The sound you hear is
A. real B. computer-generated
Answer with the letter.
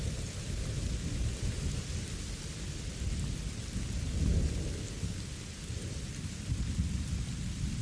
A